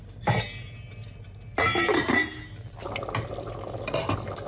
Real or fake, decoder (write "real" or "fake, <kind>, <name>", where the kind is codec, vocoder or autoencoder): real